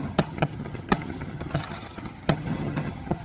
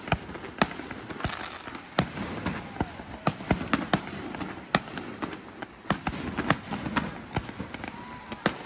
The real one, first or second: second